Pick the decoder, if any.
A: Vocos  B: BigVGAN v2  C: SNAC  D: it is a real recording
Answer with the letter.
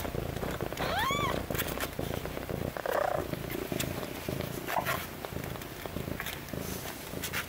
D